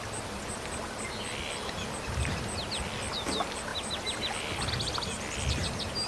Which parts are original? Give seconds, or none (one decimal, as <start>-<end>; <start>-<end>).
0.0-6.1